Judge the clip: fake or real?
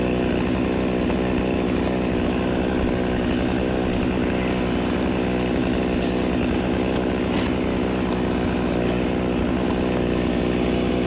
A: real